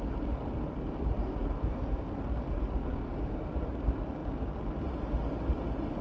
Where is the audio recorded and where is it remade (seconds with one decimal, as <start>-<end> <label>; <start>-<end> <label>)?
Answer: 0.0-2.8 recorded; 2.8-3.4 remade; 3.4-6.0 recorded

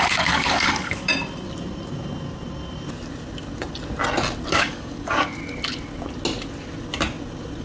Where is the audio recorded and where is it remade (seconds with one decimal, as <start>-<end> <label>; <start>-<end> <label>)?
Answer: 0.0-1.1 remade; 1.1-4.5 recorded; 4.5-5.4 remade; 5.4-7.6 recorded

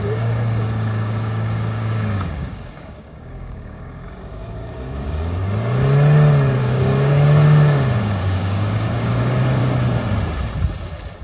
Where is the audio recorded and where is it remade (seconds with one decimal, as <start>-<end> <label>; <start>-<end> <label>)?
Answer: 0.0-5.4 remade; 5.4-6.6 recorded; 6.6-9.6 remade; 9.6-11.2 recorded

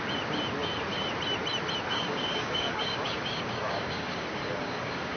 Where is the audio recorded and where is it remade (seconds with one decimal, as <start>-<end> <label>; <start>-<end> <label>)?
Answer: 0.0-1.9 recorded; 1.9-5.2 remade

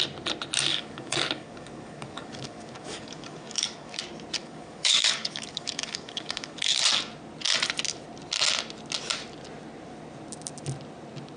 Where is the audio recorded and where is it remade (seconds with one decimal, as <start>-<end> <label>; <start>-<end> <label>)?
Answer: 0.0-0.7 recorded; 0.7-4.0 remade; 4.0-4.4 recorded; 4.4-6.8 remade; 6.8-11.4 recorded

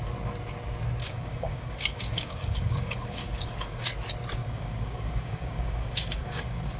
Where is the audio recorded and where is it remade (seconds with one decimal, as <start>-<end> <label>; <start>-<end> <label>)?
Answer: 0.0-1.0 recorded; 1.0-3.9 remade; 3.9-4.4 recorded; 4.4-6.8 remade

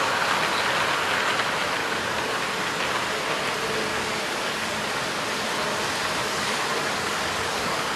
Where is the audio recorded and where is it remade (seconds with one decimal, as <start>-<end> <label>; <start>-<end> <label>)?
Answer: 0.0-1.8 recorded; 1.8-2.4 remade; 2.4-3.9 recorded; 3.9-4.9 remade; 4.9-6.2 recorded; 6.2-8.0 remade

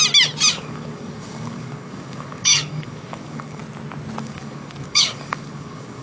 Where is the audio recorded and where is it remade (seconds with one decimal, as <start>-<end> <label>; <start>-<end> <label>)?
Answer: 0.0-0.5 recorded; 0.5-3.6 remade; 3.6-4.2 recorded; 4.2-6.0 remade